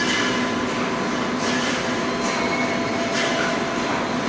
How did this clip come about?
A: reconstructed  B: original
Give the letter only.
B